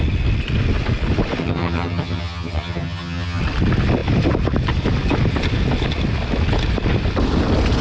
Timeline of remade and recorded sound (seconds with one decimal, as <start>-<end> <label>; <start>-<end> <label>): 0.0-1.4 recorded; 1.4-3.4 remade; 3.4-7.8 recorded